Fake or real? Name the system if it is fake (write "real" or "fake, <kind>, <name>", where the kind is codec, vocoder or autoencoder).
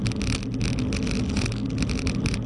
real